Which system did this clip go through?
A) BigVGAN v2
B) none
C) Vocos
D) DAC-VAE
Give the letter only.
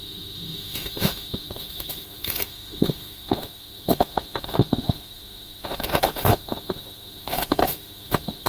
D